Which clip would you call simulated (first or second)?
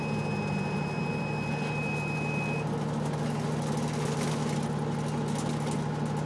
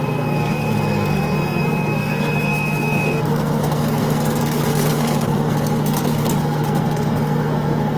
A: second